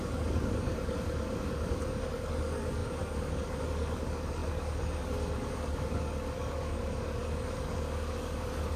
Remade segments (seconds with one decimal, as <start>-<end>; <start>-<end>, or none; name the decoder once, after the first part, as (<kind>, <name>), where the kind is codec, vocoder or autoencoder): 0.0-8.8 (codec, DAC)